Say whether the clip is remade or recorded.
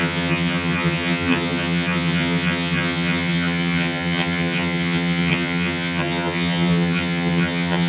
remade